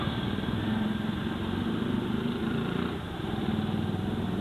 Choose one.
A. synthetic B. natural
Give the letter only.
A